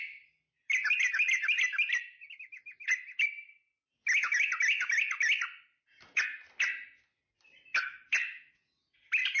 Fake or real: real